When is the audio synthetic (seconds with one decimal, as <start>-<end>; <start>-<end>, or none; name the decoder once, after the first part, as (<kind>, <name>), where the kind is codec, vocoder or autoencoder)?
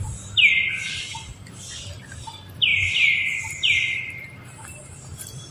0.0-5.5 (vocoder, BigVGAN v2)